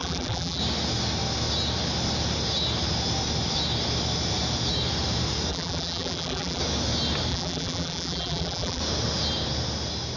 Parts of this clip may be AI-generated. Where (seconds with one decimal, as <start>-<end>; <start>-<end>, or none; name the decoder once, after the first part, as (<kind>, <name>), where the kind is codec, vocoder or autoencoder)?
0.0-0.6 (vocoder, BigVGAN v2); 5.5-6.6; 7.3-8.8